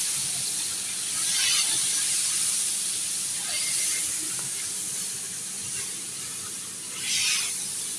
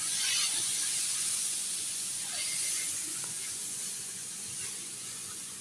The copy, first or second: second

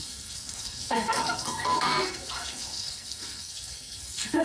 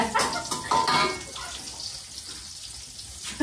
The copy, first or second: first